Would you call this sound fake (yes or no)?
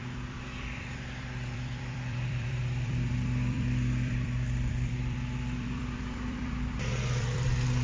yes